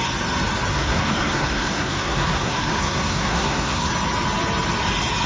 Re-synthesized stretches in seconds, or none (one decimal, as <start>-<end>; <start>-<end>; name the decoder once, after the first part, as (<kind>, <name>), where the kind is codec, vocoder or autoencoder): 0.7-3.9 (codec, SNAC)